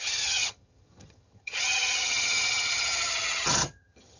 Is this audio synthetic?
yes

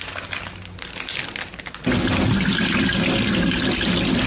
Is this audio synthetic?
no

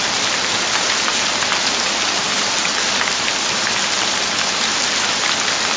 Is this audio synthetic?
no